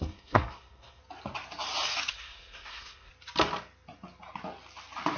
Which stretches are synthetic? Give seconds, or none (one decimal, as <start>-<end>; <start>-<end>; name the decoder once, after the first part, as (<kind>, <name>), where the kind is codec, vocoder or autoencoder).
0.0-1.0 (codec, SNAC); 2.1-3.1

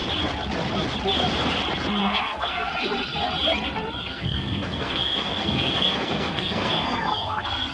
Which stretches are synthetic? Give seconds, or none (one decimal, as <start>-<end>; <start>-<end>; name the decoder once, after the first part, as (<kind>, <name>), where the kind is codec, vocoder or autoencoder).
2.0-2.7 (codec, SNAC); 4.0-7.7

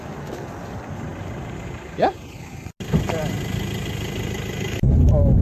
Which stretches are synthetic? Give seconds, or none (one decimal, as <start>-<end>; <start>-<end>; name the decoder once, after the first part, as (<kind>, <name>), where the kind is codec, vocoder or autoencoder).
none